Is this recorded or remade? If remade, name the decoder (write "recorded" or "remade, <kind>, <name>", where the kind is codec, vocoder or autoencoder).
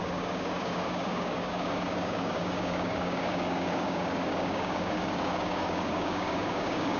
remade, codec, DAC